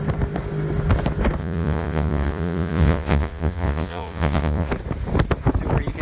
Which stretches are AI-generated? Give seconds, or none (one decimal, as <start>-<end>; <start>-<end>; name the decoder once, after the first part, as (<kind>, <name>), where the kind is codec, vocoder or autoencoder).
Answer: 1.4-4.7 (vocoder, Vocos)